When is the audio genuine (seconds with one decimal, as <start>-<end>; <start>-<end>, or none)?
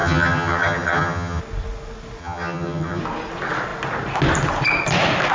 1.4-2.2; 3.0-5.3